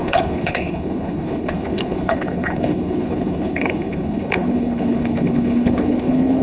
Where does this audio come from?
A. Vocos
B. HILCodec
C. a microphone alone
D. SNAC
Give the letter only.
B